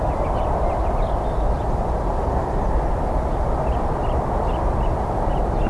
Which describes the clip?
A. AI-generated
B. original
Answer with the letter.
B